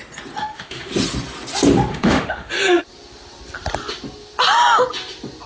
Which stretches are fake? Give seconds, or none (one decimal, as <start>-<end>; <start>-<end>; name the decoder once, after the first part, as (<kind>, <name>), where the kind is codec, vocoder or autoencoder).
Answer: 0.4-0.9 (autoencoder, DAC-VAE); 1.9-2.5